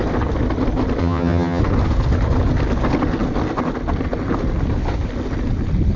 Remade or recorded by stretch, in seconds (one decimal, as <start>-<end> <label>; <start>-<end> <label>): 0.0-1.0 recorded; 1.0-1.6 remade; 1.6-6.0 recorded